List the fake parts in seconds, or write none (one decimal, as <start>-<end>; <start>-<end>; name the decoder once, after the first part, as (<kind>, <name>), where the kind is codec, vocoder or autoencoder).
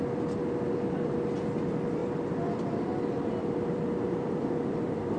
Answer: 2.0-5.2 (vocoder, BigVGAN v2)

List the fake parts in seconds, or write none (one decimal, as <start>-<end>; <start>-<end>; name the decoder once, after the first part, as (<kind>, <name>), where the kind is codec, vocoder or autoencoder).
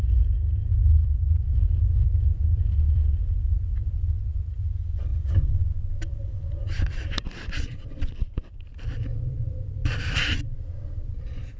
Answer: 0.0-11.6 (vocoder, BigVGAN v2)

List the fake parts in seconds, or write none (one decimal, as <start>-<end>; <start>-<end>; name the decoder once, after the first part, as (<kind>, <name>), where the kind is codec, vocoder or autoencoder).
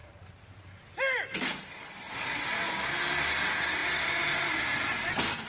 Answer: 0.0-2.5 (vocoder, BigVGAN v2); 3.8-4.6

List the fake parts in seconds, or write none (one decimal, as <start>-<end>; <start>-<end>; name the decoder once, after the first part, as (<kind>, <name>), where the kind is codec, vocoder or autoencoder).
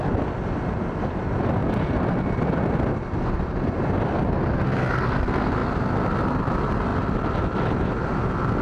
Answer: none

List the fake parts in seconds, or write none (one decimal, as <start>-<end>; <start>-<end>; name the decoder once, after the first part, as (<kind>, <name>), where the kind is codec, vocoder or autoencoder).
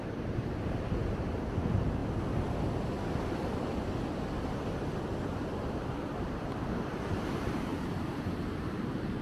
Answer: 0.0-2.0 (vocoder, BigVGAN v2); 6.2-9.2